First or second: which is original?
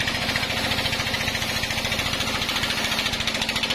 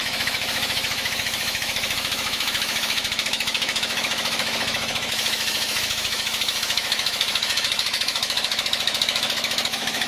first